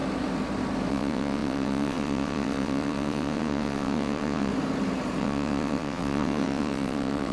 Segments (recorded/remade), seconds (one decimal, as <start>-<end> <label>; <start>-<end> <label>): 0.0-0.9 recorded; 0.9-4.5 remade; 4.5-5.2 recorded; 5.2-7.3 remade